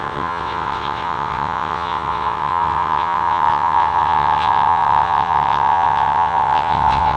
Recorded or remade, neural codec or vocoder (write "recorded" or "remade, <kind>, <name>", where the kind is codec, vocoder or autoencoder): remade, vocoder, WaveNeXt